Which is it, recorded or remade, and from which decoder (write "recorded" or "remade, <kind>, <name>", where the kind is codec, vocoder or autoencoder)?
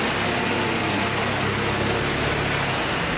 recorded